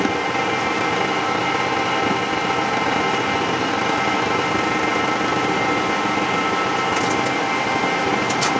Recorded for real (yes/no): yes